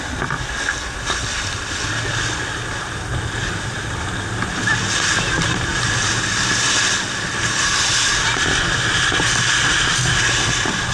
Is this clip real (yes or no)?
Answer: yes